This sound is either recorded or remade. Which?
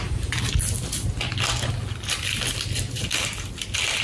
recorded